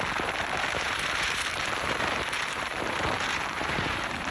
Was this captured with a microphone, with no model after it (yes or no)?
no